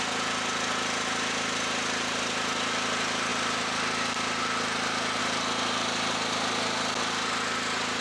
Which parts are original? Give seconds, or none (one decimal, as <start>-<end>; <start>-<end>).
0.0-8.0